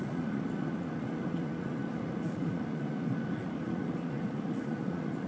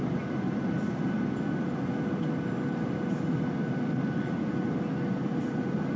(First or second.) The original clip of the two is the second